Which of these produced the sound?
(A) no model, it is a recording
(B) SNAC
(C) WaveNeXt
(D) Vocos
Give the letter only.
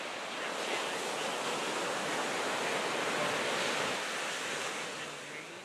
A